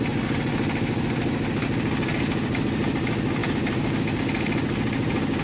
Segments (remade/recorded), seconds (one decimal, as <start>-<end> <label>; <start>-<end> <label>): 0.0-5.4 recorded